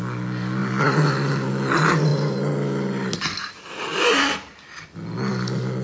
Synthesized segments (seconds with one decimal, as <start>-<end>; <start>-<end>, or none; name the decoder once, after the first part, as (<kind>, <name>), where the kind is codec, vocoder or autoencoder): none